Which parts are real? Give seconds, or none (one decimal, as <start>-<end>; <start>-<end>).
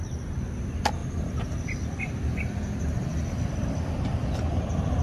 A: 0.0-5.0